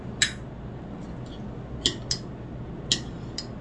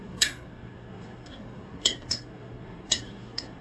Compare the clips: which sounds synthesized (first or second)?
second